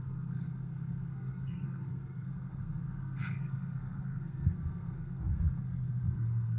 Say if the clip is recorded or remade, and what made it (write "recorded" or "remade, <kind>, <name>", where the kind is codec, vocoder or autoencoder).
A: remade, codec, SNAC